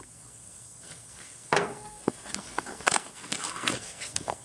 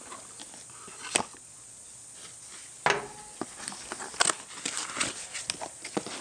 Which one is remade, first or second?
first